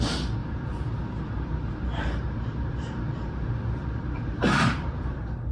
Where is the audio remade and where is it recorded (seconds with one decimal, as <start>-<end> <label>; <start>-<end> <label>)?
0.0-0.4 recorded; 0.4-3.6 remade; 3.6-5.5 recorded